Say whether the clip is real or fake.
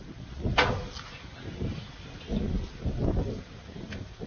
real